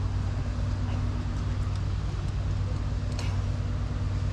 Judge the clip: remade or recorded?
recorded